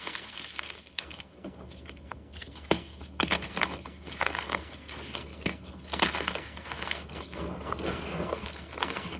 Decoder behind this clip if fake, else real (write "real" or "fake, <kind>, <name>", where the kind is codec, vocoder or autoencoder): fake, codec, SNAC